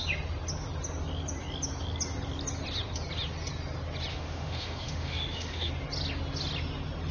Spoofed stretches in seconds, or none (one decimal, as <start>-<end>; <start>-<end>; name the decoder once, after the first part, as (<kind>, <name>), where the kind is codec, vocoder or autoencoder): 4.1-5.7 (autoencoder, DAC-VAE)